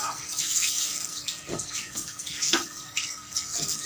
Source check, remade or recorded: remade